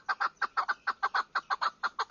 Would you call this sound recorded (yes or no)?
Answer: yes